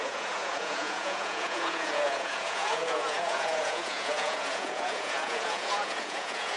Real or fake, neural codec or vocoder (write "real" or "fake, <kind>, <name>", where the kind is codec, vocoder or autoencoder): fake, vocoder, Vocos